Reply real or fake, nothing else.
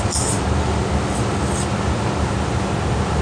real